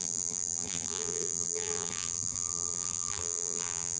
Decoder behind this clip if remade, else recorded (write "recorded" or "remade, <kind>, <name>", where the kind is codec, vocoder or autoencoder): remade, vocoder, BigVGAN v2